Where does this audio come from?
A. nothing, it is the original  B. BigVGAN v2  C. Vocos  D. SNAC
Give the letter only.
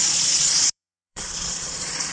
C